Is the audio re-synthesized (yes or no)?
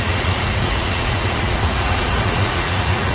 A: yes